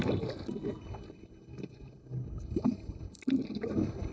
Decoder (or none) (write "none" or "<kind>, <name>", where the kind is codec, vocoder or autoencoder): none